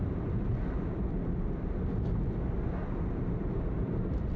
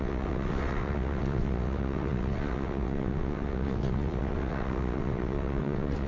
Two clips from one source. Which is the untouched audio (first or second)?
first